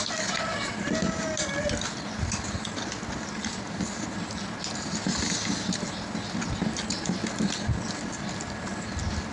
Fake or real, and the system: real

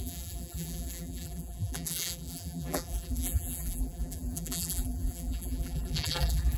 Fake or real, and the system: fake, vocoder, BigVGAN v2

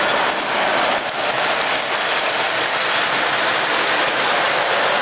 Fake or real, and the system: real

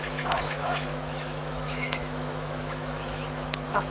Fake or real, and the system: fake, autoencoder, DAC-VAE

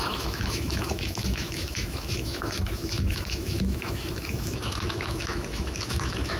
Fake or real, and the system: fake, autoencoder, DAC-VAE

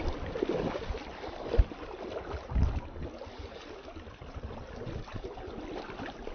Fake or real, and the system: real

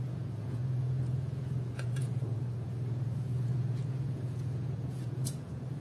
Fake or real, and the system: fake, vocoder, Vocos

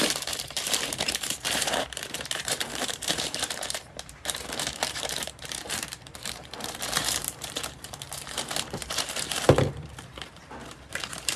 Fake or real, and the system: fake, vocoder, BigVGAN v2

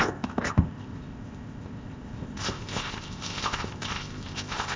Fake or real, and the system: fake, codec, ZipCodec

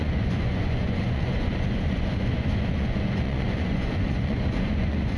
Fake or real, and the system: fake, vocoder, Vocos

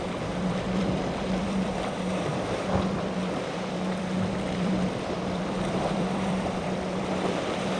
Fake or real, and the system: fake, vocoder, BigVGAN v2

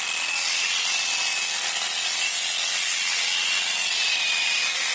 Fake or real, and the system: real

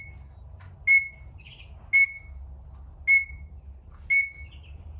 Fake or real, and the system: real